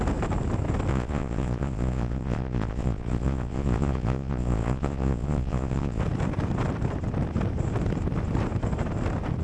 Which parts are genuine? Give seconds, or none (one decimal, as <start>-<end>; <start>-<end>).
0.0-0.9; 6.0-9.4